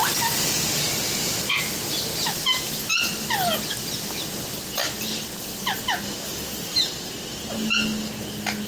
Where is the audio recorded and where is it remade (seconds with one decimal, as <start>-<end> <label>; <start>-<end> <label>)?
0.0-1.5 remade; 1.5-8.7 recorded